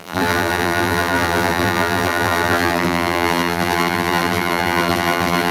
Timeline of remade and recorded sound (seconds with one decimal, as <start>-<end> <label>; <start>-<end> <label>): 0.0-5.5 remade